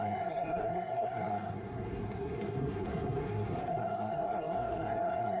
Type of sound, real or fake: fake